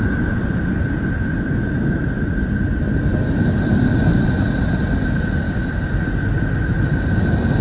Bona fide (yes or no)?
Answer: yes